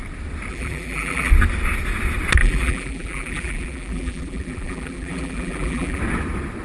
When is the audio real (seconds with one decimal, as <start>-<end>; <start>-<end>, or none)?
0.0-0.5; 1.3-2.4; 6.0-6.6